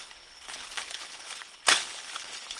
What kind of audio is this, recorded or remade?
remade